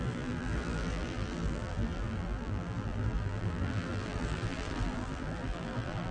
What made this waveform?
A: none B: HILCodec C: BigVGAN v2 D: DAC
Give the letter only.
C